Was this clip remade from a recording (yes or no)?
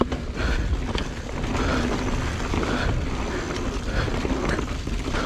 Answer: no